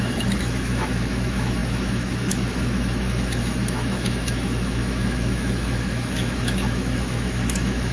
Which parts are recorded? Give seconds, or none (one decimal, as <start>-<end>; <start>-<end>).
none